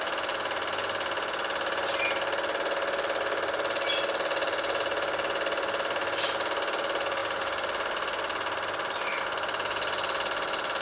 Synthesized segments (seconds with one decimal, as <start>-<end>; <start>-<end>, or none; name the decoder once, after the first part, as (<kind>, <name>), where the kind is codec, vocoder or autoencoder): none